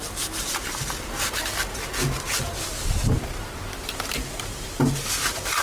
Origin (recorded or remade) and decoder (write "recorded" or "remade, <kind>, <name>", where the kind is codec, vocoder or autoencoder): recorded